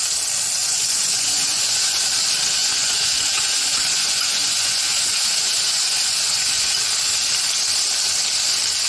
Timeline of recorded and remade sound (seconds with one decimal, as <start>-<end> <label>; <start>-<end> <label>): 0.0-0.6 recorded; 0.6-2.0 remade; 2.0-2.6 recorded; 2.6-6.8 remade; 6.8-8.9 recorded